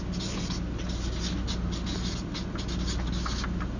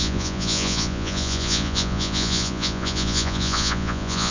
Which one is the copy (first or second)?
second